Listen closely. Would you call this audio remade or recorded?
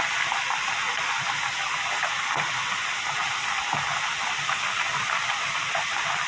recorded